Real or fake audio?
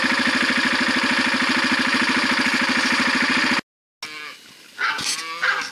real